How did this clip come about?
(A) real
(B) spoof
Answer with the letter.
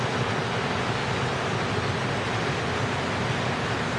A